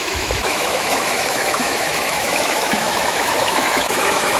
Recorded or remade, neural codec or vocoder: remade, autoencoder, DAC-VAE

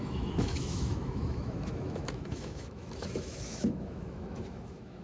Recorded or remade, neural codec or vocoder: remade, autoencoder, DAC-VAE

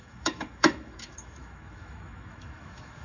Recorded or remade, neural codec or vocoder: remade, autoencoder, DAC-VAE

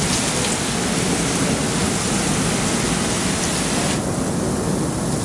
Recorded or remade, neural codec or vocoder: recorded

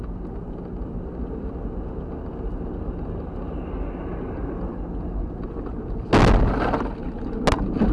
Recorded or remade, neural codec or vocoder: recorded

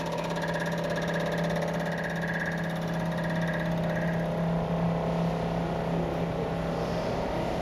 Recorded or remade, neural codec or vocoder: recorded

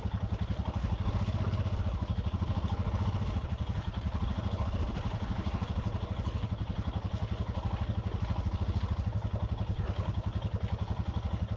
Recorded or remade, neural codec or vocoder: recorded